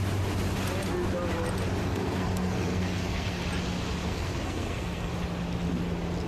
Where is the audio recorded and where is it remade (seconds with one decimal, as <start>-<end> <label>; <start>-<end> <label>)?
0.0-1.8 recorded; 1.8-3.4 remade; 3.4-4.0 recorded; 4.0-5.1 remade; 5.1-6.3 recorded